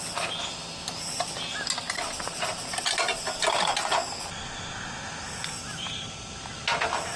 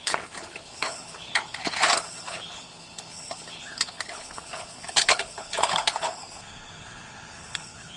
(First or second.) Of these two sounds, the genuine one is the first